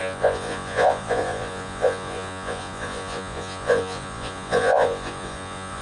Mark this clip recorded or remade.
remade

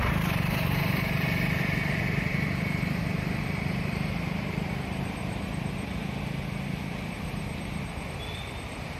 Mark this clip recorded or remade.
remade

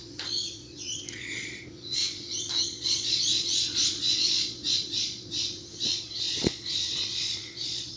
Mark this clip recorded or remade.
remade